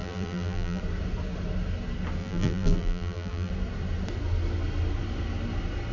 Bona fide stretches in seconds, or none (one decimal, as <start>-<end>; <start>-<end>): 0.8-2.2; 3.5-5.9